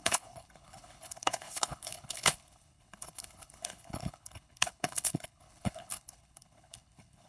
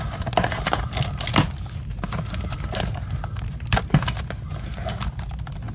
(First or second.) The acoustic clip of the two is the second